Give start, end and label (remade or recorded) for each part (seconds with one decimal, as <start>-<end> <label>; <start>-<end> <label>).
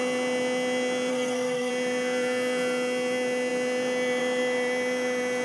0.0-1.1 recorded; 1.1-1.7 remade; 1.7-5.4 recorded